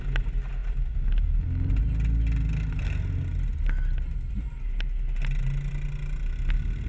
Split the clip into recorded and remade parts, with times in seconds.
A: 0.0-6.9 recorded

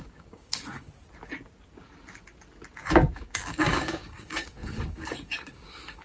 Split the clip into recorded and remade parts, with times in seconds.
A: 0.0-0.9 remade; 0.9-2.8 recorded; 2.8-6.0 remade

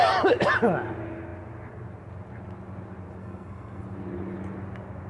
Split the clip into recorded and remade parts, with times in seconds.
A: 0.0-3.2 recorded; 3.2-3.8 remade; 3.8-5.1 recorded

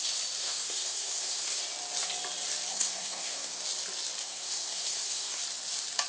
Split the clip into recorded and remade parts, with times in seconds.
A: 0.0-0.4 recorded; 0.4-1.6 remade; 1.6-2.7 recorded; 2.7-3.6 remade; 3.6-4.2 recorded; 4.2-5.4 remade; 5.4-6.1 recorded

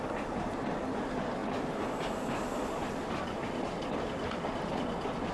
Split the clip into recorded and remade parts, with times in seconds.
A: 0.0-5.3 recorded